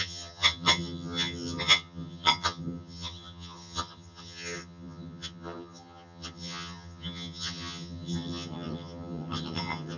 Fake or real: fake